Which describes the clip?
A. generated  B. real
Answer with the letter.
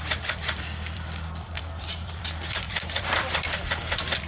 A